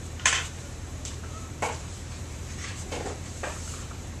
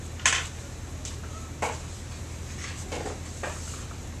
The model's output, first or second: first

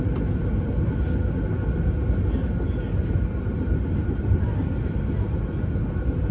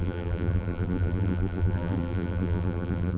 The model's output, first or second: second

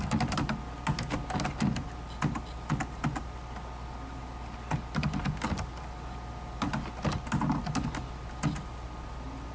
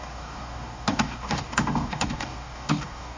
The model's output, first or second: second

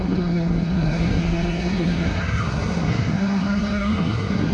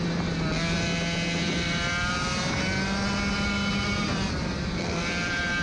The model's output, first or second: first